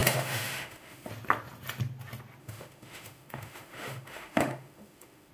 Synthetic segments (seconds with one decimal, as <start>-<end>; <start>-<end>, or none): 0.0-1.1; 2.4-5.3